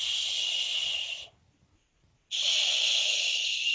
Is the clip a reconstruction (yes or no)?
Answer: no